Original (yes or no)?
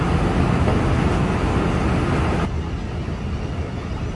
yes